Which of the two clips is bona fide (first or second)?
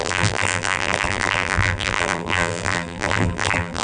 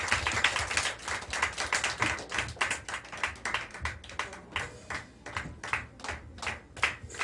second